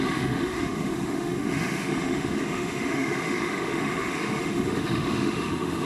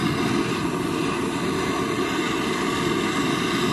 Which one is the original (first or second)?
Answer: second